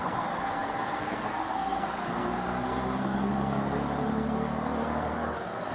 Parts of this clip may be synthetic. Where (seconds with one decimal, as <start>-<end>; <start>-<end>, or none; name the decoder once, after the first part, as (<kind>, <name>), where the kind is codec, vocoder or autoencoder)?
0.0-5.7 (codec, SNAC)